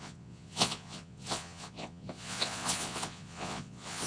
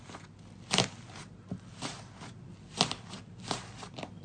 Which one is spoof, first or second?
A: first